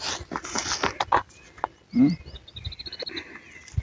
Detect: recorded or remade recorded